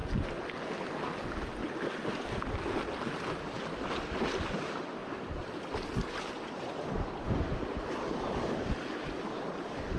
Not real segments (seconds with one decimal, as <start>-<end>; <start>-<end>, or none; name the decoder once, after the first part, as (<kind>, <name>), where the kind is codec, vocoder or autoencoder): none